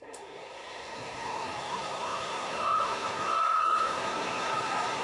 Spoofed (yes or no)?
yes